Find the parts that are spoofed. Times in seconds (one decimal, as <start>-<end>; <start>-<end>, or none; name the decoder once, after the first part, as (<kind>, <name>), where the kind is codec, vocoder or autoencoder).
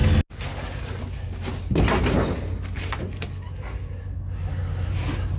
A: none